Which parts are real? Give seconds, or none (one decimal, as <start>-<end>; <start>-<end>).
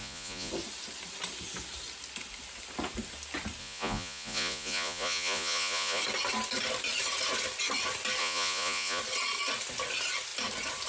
0.5-3.6; 6.0-8.2; 9.0-10.9